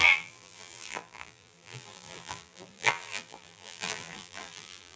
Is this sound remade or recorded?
remade